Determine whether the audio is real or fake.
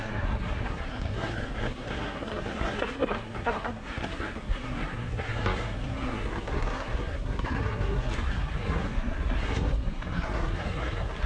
fake